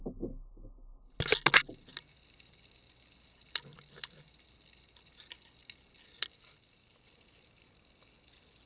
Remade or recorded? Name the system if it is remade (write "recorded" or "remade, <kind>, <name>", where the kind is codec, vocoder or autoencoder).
recorded